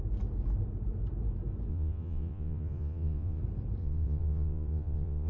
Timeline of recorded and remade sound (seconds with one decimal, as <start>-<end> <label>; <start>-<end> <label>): 0.0-1.7 recorded; 1.7-3.4 remade; 3.4-3.8 recorded; 3.8-5.3 remade